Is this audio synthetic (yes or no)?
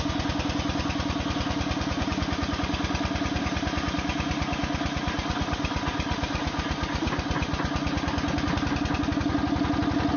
no